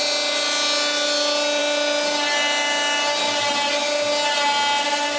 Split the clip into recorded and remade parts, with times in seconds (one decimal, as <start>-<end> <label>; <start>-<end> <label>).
0.0-5.2 recorded